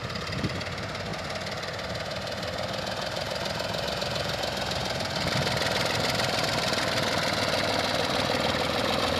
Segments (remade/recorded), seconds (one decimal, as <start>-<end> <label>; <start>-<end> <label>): 0.0-9.2 remade